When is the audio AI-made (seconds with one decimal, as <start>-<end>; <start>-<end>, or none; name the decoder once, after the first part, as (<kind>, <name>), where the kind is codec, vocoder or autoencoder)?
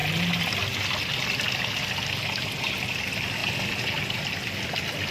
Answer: none